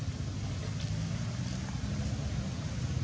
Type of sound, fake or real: real